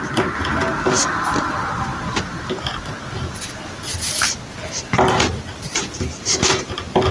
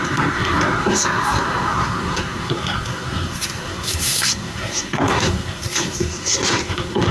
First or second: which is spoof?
second